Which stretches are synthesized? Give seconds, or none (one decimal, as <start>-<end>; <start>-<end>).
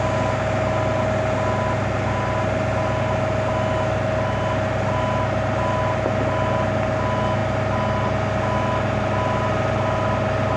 none